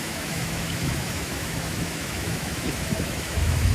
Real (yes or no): no